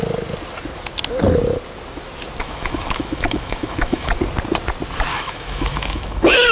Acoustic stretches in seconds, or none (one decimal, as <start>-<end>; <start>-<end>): 0.0-2.4; 4.1-5.1